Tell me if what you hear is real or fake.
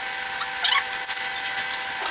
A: real